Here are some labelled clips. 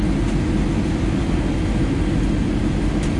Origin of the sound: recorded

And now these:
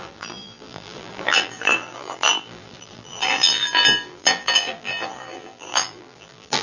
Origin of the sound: remade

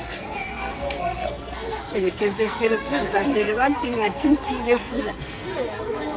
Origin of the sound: remade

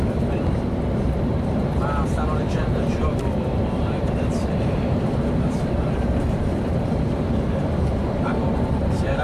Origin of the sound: remade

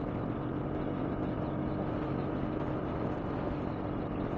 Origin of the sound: recorded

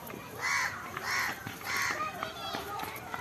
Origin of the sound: remade